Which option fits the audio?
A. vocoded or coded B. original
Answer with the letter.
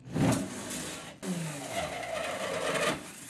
B